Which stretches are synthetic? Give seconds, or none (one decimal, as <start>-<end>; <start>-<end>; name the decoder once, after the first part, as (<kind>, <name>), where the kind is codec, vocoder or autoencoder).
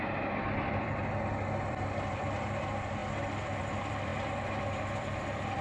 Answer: 0.0-1.0 (vocoder, BigVGAN v2); 1.7-3.0; 3.6-4.1; 4.7-5.6